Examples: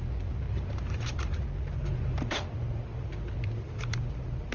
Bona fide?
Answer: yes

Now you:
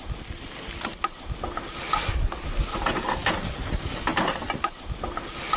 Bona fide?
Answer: yes